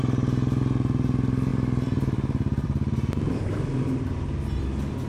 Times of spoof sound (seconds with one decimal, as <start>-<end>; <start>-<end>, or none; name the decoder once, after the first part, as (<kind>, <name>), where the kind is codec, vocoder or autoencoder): 1.5-4.6 (vocoder, BigVGAN v2)